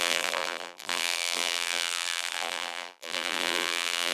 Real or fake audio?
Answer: fake